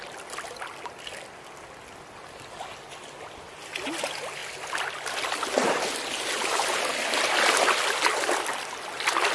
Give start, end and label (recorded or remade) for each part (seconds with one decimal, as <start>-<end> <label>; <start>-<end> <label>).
0.0-9.3 recorded